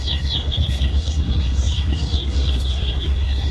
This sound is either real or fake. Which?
fake